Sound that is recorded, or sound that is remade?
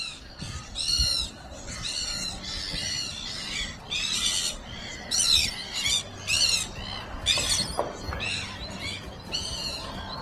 recorded